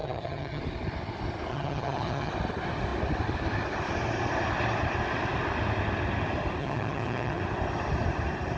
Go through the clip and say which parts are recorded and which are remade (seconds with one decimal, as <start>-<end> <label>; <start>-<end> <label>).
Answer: 0.0-0.6 remade; 0.6-1.5 recorded; 1.5-2.3 remade; 2.3-6.6 recorded; 6.6-7.4 remade; 7.4-8.6 recorded